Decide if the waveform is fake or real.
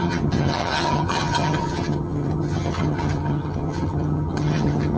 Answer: fake